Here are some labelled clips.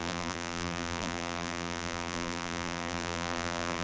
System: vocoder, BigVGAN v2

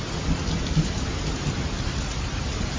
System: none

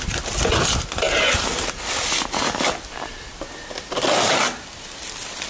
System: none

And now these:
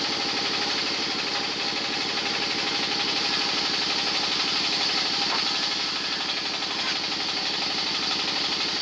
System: none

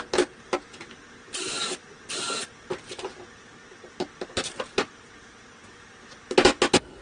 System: none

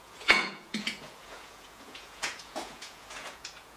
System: vocoder, Vocos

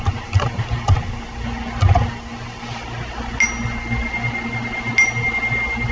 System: none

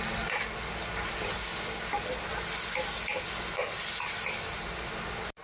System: none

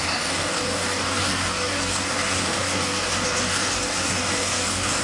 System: codec, DAC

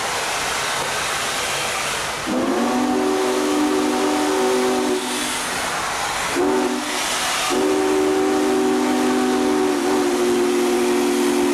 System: none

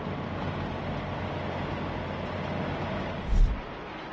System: none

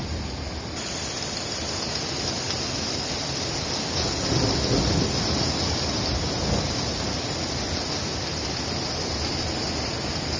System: none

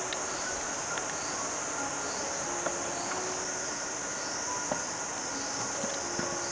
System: none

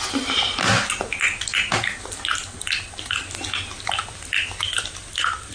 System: none